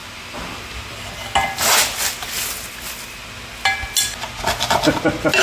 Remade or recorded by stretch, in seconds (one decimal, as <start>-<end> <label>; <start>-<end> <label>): 0.0-5.4 recorded